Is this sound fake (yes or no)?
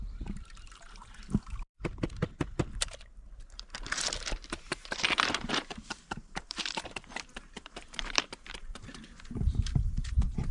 yes